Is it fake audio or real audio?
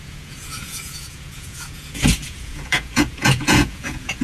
fake